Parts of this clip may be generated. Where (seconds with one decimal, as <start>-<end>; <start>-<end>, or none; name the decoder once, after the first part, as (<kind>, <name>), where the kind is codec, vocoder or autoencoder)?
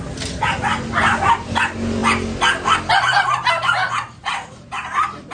none